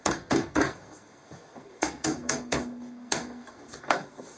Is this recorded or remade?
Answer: remade